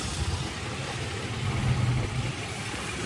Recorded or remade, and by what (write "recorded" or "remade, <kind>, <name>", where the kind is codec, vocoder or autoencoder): recorded